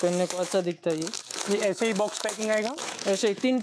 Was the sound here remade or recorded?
remade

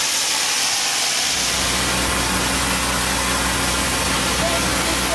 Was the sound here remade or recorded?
recorded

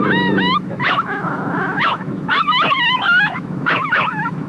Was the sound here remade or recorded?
remade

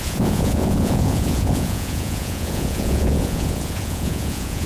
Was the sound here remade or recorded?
remade